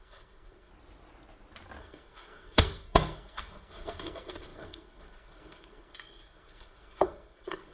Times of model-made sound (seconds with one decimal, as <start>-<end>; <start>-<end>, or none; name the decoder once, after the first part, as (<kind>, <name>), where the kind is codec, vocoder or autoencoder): 0.0-0.7 (codec, SNAC); 1.8-7.7